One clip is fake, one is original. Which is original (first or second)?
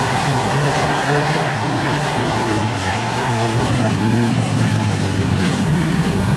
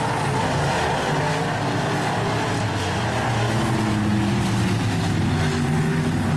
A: second